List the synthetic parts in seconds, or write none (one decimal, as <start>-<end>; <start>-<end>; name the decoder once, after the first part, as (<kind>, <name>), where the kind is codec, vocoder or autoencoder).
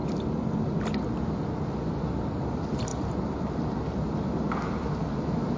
none